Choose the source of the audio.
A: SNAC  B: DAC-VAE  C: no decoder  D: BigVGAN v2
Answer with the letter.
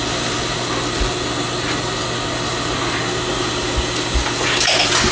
C